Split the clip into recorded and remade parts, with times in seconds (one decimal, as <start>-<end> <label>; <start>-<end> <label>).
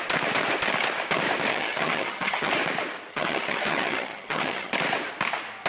0.0-1.5 recorded; 1.5-2.5 remade; 2.5-3.1 recorded; 3.1-4.7 remade; 4.7-5.7 recorded